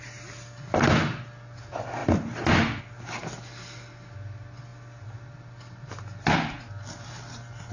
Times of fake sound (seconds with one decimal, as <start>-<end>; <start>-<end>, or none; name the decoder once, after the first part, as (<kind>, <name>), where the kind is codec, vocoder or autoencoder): none